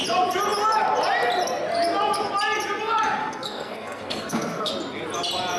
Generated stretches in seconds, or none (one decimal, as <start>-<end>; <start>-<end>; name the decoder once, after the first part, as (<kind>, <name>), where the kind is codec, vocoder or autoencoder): 3.2-4.7 (codec, SNAC)